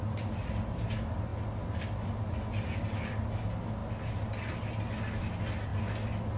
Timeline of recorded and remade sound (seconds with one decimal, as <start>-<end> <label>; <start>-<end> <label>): 0.0-6.4 recorded